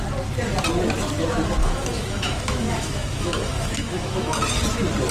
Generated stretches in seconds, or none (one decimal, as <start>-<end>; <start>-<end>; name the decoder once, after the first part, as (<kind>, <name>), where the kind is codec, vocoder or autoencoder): 1.6-4.4 (autoencoder, DAC-VAE)